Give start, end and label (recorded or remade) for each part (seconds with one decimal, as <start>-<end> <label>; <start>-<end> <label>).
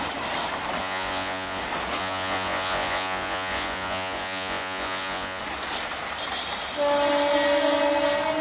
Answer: 0.0-0.8 recorded; 0.8-1.6 remade; 1.6-2.0 recorded; 2.0-5.4 remade; 5.4-8.4 recorded